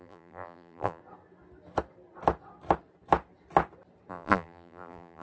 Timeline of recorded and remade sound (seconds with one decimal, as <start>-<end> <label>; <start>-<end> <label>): 0.0-1.0 remade; 1.0-4.1 recorded; 4.1-5.2 remade